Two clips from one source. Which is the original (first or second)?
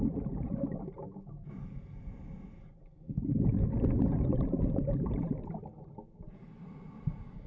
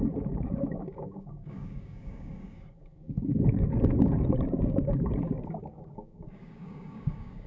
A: first